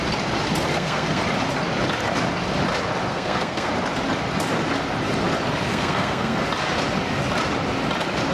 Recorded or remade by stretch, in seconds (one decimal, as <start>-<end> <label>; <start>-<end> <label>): 0.0-0.7 recorded; 0.7-1.2 remade; 1.2-3.1 recorded; 3.1-3.7 remade; 3.7-5.7 recorded; 5.7-6.4 remade; 6.4-8.3 recorded